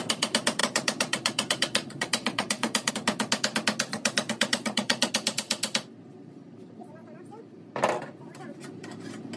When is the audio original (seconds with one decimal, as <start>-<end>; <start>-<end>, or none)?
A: 0.0-0.6; 2.9-3.9; 5.1-9.4